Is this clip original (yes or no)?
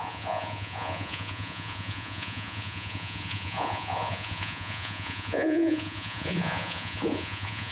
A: no